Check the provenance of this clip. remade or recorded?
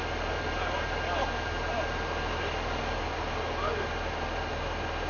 recorded